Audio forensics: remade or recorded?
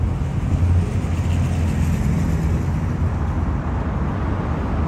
recorded